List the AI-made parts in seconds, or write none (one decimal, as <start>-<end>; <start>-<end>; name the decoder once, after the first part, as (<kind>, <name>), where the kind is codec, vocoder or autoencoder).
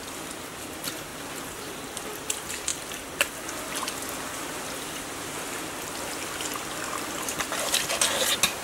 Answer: none